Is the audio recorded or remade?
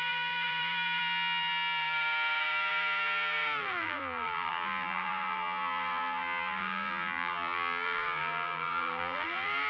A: remade